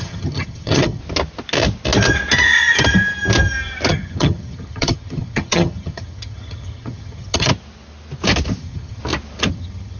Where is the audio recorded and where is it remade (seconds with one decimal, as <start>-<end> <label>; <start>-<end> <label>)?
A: 0.0-1.0 remade; 1.0-3.9 recorded; 3.9-7.5 remade; 7.5-8.6 recorded; 8.6-9.0 remade; 9.0-9.5 recorded; 9.5-10.0 remade